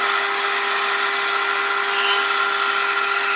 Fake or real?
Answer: real